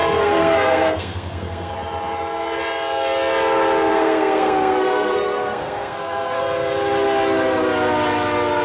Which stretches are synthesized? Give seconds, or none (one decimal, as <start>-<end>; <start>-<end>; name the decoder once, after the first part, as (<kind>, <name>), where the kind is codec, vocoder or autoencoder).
0.0-1.7 (codec, SNAC); 3.9-6.4